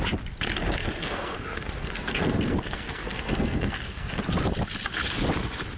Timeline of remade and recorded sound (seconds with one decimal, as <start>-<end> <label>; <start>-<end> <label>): 0.0-0.8 recorded; 0.8-4.2 remade; 4.2-5.8 recorded